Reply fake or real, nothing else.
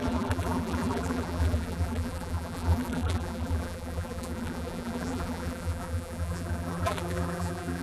fake